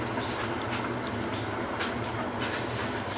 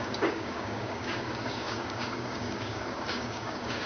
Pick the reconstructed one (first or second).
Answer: second